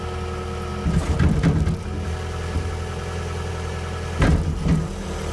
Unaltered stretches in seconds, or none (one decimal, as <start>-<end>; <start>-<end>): 0.0-5.3